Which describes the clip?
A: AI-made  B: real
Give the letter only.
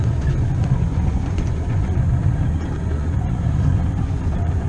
A